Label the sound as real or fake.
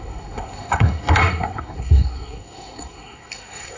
fake